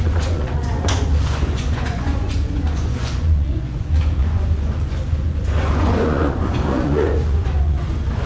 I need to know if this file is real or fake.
fake